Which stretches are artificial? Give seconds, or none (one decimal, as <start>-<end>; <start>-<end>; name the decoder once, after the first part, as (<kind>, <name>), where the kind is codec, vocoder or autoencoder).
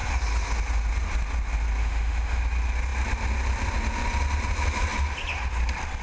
1.8-2.4 (autoencoder, DAC-VAE)